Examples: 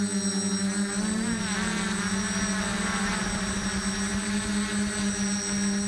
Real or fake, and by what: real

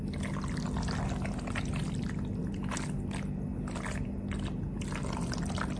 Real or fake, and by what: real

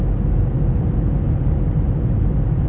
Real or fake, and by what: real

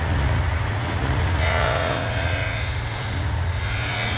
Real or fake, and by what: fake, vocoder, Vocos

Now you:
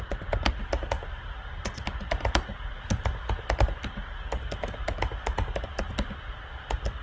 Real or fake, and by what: real